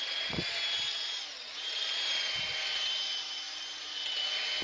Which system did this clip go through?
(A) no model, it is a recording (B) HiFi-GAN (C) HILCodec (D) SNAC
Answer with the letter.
A